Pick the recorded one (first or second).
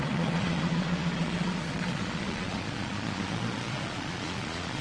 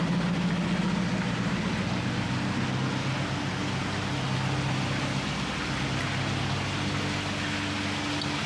second